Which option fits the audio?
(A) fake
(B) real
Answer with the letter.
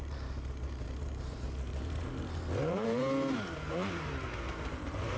A